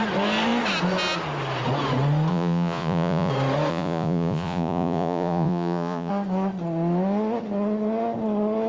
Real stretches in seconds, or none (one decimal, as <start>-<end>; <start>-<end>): 0.0-2.3; 3.3-3.7; 6.1-8.7